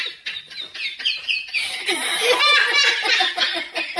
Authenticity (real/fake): real